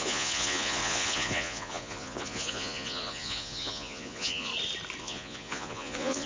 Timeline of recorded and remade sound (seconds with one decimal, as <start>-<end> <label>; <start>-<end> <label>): 0.0-4.5 remade; 4.5-5.0 recorded; 5.0-6.3 remade